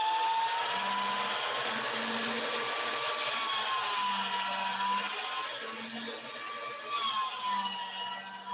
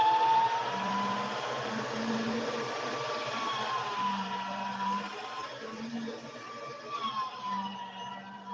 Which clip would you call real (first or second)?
first